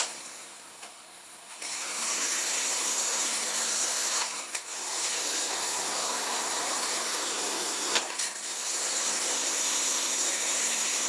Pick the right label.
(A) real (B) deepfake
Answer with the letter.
B